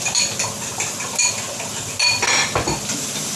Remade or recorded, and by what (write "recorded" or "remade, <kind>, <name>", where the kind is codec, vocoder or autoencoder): recorded